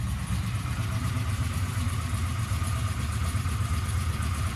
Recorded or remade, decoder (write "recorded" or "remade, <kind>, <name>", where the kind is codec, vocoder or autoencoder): remade, vocoder, BigVGAN v2